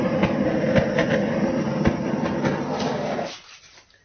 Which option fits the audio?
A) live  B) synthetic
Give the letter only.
A